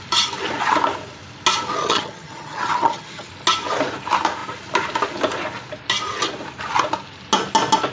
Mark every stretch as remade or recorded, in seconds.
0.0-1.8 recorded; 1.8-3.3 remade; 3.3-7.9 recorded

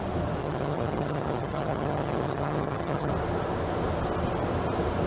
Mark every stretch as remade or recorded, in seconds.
0.0-0.4 recorded; 0.4-3.1 remade; 3.1-5.1 recorded

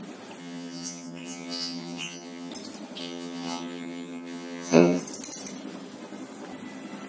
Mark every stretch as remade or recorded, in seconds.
0.0-0.4 recorded; 0.4-2.5 remade; 2.5-3.0 recorded; 3.0-5.0 remade; 5.0-7.1 recorded

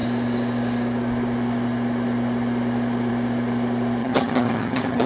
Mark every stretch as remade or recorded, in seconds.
0.0-4.0 recorded; 4.0-5.1 remade

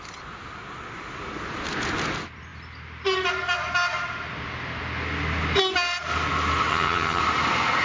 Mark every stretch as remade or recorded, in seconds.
0.0-6.7 recorded; 6.7-7.2 remade; 7.2-7.8 recorded

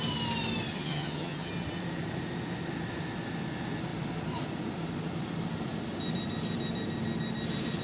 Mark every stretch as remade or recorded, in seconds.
0.0-0.7 recorded; 0.7-1.5 remade; 1.5-7.8 recorded